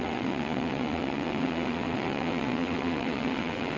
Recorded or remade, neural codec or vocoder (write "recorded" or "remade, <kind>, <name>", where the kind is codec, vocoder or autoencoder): remade, vocoder, WaveNeXt